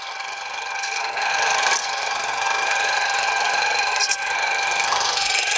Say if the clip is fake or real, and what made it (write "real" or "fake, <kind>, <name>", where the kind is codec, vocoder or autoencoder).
fake, codec, SNAC